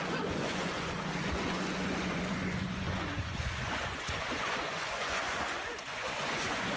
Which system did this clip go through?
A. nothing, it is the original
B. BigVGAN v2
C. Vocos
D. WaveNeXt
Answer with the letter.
C